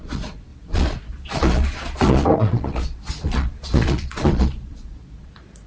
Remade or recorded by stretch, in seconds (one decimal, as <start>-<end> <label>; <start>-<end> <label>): 0.0-5.7 remade